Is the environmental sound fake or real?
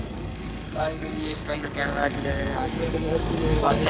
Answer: fake